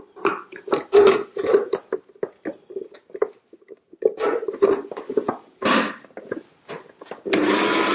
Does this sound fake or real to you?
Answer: real